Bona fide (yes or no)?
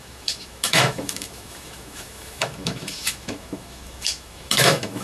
no